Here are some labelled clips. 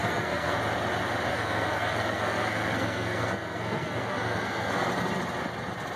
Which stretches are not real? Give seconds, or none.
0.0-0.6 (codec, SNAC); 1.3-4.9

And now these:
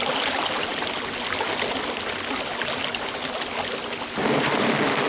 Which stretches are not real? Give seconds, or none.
none

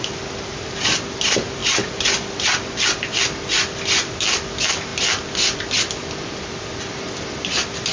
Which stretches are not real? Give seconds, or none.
none

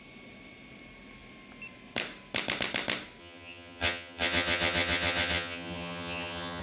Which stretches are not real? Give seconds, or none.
3.2-6.6 (vocoder, HiFi-GAN)

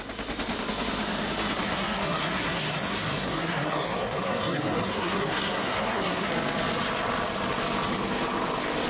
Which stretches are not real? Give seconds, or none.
1.6-6.3 (codec, SNAC)

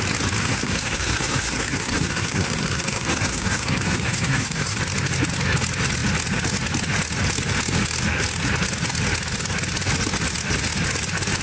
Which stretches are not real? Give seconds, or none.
0.4-4.8 (codec, SNAC)

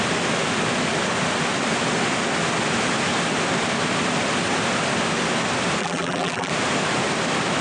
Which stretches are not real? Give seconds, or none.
5.8-6.5 (vocoder, BigVGAN v2)